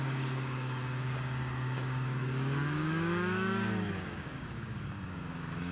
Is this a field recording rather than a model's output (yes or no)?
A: no